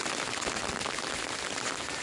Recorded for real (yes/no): yes